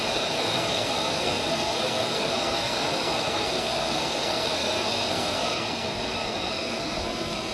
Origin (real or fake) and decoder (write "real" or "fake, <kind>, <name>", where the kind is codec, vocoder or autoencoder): fake, codec, SNAC